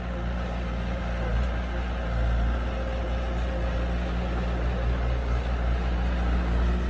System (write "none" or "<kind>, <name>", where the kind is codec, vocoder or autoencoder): none